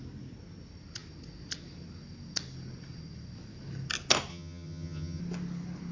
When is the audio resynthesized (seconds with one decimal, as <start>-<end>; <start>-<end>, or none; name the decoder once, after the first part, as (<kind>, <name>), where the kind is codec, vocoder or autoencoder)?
4.3-5.2 (vocoder, HiFi-GAN)